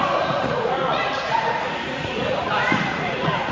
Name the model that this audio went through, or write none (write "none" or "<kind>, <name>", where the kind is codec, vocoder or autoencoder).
vocoder, Vocos